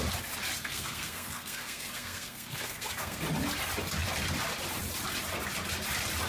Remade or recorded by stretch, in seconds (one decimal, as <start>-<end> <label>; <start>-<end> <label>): 0.0-0.7 recorded; 0.7-3.2 remade; 3.2-6.3 recorded